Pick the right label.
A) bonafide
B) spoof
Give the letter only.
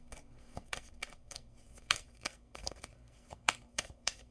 B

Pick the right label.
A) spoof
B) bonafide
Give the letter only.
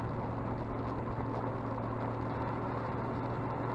B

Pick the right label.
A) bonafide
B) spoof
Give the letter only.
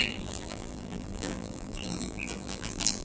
B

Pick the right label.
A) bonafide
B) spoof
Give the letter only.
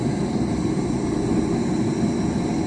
A